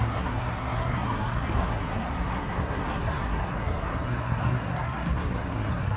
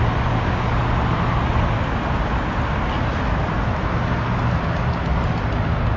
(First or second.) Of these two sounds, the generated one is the first